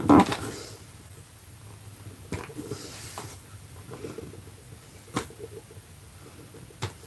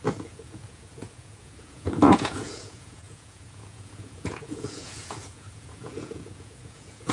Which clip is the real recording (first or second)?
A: first